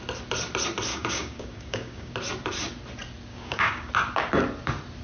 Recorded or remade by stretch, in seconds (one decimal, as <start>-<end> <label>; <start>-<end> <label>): 0.0-0.9 recorded; 0.9-2.1 remade; 2.1-3.3 recorded; 3.3-3.9 remade; 3.9-5.0 recorded